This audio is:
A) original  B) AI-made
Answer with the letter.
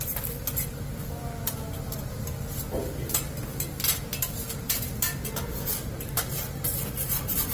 A